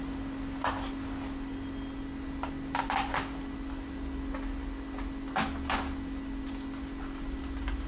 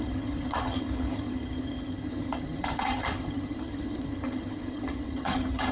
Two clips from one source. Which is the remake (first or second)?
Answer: second